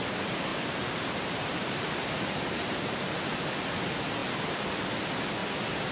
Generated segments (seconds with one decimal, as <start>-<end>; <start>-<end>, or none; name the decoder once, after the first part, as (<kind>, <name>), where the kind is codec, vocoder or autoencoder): 0.5-3.5 (vocoder, BigVGAN v2)